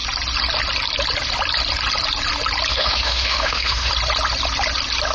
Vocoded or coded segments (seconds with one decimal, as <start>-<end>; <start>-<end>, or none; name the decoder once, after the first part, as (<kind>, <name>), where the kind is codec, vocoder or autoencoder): 2.7-3.9 (autoencoder, DAC-VAE)